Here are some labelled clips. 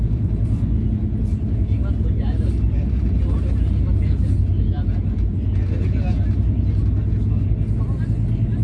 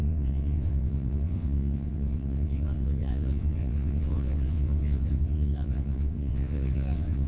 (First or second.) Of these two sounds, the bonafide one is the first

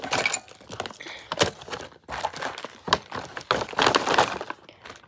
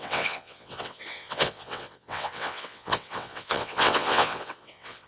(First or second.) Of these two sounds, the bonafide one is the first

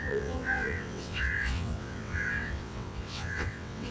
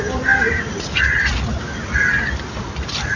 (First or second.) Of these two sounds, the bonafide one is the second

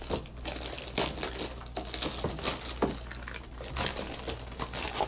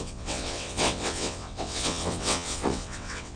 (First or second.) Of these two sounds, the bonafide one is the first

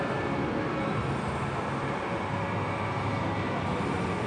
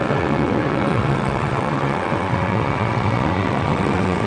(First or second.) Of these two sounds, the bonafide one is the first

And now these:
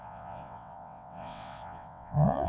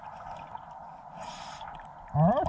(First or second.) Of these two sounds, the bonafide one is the second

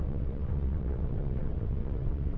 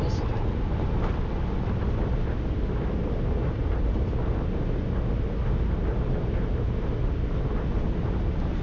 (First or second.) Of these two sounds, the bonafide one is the second